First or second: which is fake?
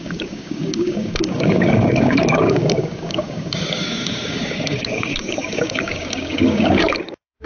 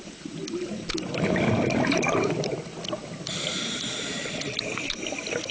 first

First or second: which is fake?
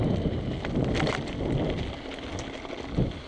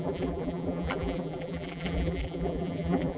second